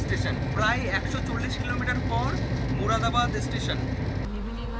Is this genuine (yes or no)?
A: yes